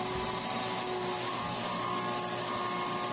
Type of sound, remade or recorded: recorded